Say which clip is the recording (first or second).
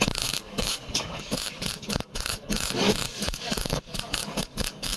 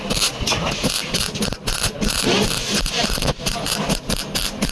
second